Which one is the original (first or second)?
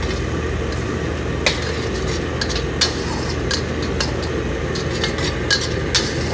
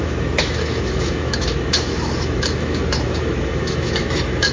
first